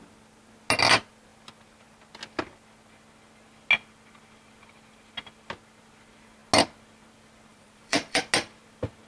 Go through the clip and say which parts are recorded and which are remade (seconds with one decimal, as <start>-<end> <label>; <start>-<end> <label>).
0.0-7.5 recorded; 7.5-8.2 remade; 8.2-9.1 recorded